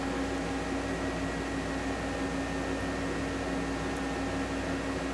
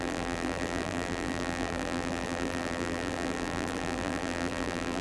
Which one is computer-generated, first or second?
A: second